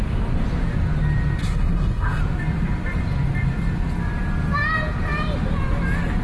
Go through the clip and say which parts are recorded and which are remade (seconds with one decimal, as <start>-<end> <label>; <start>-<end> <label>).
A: 0.0-1.4 recorded; 1.4-2.2 remade; 2.2-6.2 recorded